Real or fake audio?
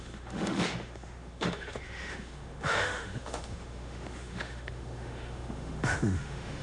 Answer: fake